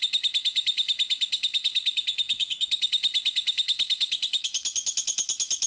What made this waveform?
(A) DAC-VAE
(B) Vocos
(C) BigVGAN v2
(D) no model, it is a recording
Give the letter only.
A